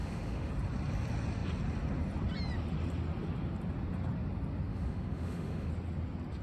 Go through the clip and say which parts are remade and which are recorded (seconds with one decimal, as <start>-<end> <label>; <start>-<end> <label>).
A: 0.0-0.5 remade; 0.5-4.7 recorded; 4.7-5.7 remade; 5.7-6.4 recorded